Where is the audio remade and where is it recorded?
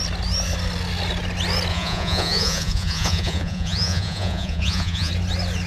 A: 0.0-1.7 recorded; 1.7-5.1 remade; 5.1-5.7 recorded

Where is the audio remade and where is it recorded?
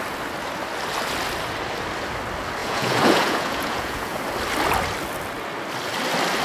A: 0.0-2.6 recorded; 2.6-4.2 remade; 4.2-6.4 recorded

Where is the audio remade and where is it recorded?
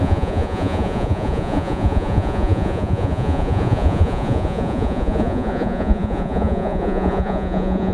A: 0.0-7.9 remade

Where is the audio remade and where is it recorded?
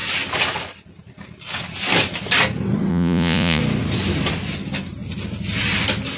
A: 0.0-2.9 recorded; 2.9-3.6 remade; 3.6-6.2 recorded